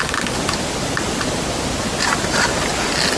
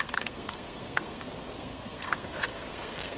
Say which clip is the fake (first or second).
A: second